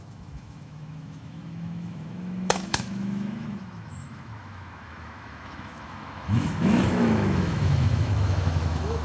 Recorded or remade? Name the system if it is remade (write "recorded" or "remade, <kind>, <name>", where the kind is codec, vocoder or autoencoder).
remade, autoencoder, DAC-VAE